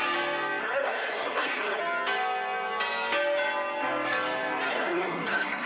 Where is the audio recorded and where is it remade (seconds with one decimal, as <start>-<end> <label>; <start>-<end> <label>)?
0.0-0.6 recorded; 0.6-1.8 remade; 1.8-4.7 recorded; 4.7-5.7 remade